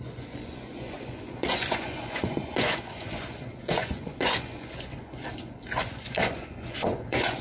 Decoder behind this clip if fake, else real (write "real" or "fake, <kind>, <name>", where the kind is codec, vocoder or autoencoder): fake, vocoder, Vocos